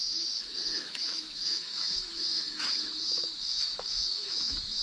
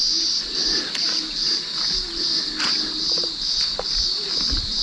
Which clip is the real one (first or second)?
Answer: second